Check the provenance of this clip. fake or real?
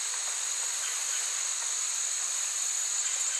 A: real